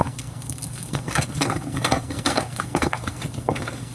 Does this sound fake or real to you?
fake